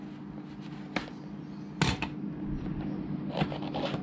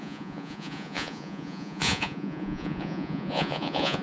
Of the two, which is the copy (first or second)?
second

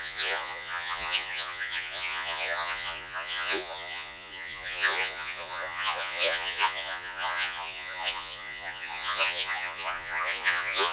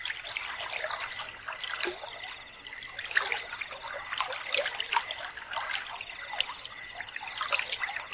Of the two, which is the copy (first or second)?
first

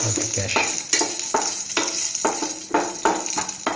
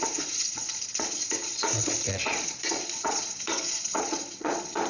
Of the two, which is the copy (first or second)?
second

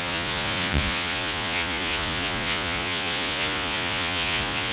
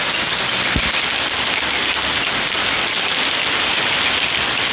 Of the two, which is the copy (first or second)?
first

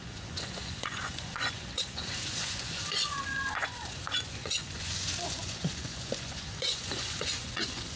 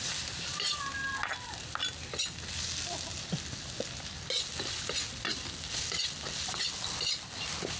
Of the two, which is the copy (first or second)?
first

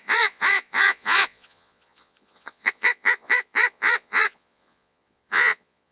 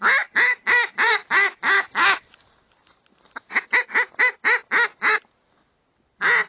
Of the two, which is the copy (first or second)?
first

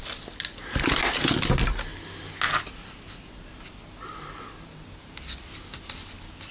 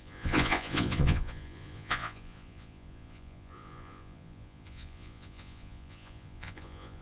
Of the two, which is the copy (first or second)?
second